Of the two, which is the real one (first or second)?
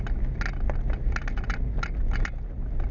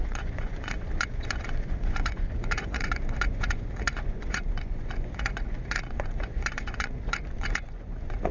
first